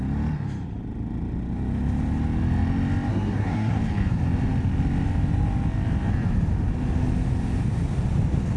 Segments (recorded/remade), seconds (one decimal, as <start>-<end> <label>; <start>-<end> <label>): 0.0-3.1 recorded; 3.1-3.8 remade; 3.8-8.6 recorded